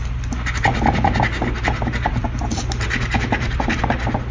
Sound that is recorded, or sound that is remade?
recorded